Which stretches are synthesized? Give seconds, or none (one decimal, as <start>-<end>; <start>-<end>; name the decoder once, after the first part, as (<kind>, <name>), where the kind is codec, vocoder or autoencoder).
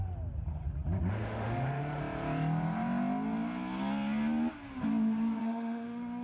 1.1-2.0 (autoencoder, DAC-VAE); 5.4-6.2